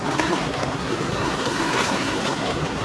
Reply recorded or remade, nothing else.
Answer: remade